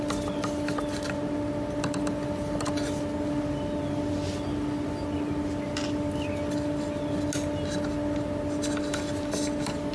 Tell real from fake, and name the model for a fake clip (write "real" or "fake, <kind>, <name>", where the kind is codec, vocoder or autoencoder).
real